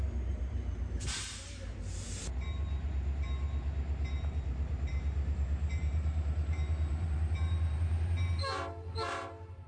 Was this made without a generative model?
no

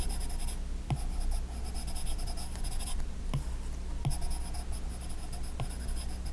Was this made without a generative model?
yes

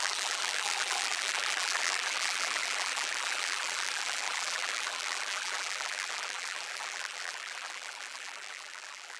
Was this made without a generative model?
no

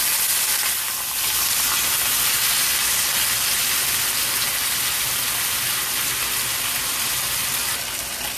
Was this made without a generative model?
yes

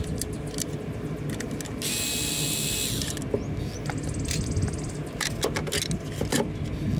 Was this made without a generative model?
yes